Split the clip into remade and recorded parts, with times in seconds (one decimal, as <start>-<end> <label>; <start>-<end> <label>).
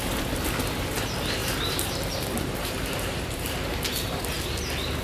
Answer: 0.0-1.4 recorded; 1.4-4.4 remade; 4.4-5.0 recorded